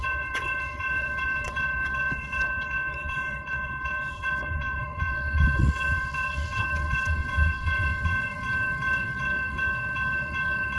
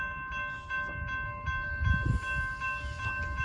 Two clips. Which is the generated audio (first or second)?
first